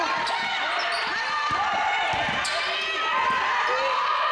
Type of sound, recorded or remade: recorded